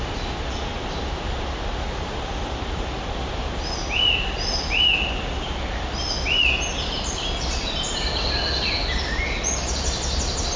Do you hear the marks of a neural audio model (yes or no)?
no